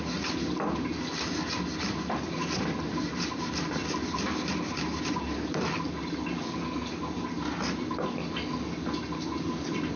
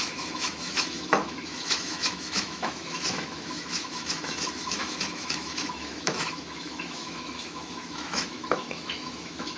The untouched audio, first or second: first